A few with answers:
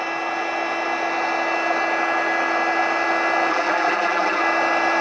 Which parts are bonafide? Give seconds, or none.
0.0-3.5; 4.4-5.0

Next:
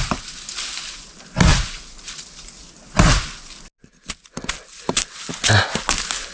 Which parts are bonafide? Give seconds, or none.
0.0-6.3